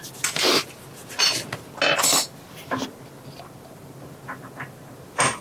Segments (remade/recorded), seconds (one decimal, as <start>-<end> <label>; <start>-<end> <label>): 0.0-5.4 recorded